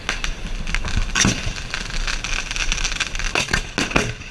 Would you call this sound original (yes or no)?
yes